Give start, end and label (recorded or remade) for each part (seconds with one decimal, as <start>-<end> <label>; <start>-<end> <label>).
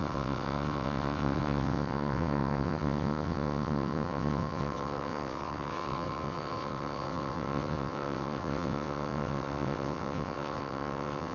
0.0-11.3 remade